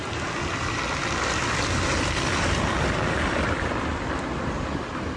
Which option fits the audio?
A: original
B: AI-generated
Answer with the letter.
A